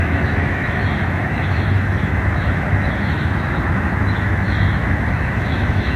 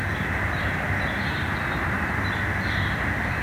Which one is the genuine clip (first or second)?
second